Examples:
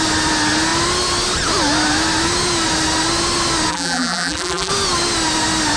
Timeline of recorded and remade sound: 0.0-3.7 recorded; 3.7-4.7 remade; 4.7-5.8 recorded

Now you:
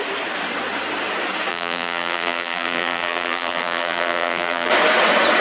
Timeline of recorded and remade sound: 0.0-1.5 recorded; 1.5-4.7 remade; 4.7-5.4 recorded

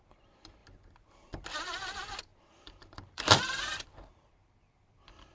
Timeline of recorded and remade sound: 0.0-2.3 recorded; 2.3-4.3 remade; 4.3-5.3 recorded

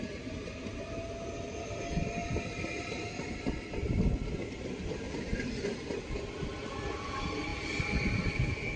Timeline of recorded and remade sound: 0.0-8.8 recorded

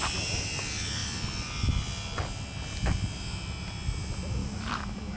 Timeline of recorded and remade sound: 0.0-1.0 recorded; 1.0-2.2 remade; 2.2-4.4 recorded; 4.4-5.2 remade

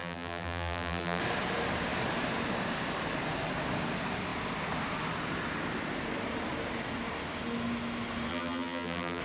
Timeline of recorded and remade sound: 0.0-1.2 remade; 1.2-8.3 recorded; 8.3-9.2 remade